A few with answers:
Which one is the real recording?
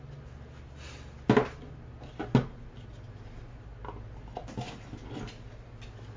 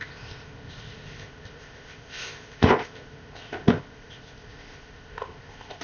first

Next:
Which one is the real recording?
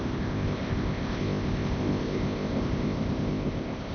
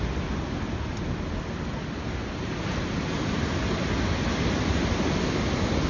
second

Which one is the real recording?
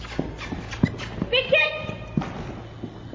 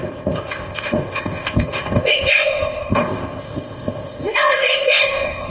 first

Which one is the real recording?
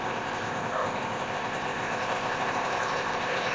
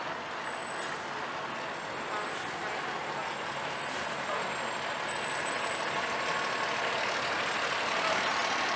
second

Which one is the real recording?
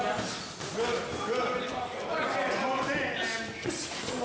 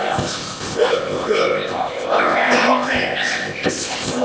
first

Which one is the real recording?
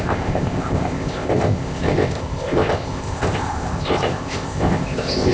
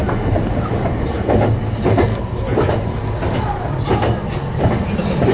second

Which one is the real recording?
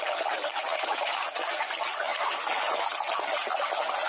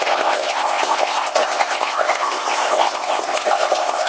first